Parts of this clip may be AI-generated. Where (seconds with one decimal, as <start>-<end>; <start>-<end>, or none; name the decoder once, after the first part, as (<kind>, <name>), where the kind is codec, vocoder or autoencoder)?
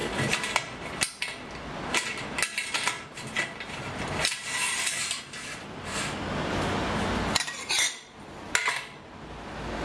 none